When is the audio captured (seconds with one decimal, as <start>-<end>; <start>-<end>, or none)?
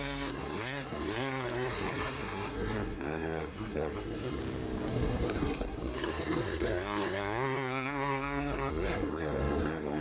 4.4-4.9